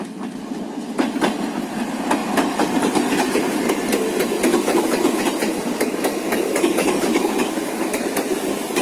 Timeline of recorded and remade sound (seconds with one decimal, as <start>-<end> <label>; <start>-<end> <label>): 0.0-4.5 recorded; 4.5-5.2 remade; 5.2-5.7 recorded; 5.7-8.0 remade; 8.0-8.8 recorded